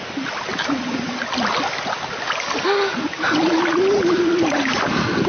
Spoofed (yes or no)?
no